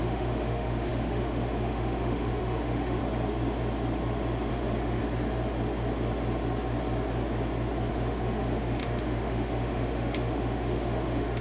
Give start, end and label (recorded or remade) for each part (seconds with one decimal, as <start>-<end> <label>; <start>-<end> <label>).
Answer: 0.0-3.0 remade; 3.0-4.5 recorded; 4.5-5.0 remade; 5.0-7.9 recorded; 7.9-11.4 remade